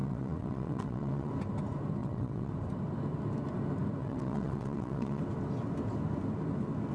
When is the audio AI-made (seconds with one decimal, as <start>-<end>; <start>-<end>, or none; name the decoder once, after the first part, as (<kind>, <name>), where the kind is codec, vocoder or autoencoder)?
0.0-1.3 (vocoder, WaveNeXt); 2.0-2.5; 4.0-5.2